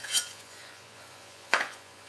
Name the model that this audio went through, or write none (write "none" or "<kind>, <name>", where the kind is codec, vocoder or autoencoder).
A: vocoder, Vocos